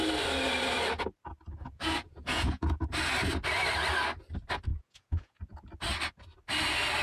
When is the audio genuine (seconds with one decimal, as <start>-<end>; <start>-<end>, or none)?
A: 0.0-1.6; 2.8-4.7; 5.7-7.0